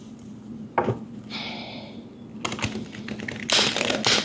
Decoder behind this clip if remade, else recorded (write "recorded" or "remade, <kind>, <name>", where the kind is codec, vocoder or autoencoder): recorded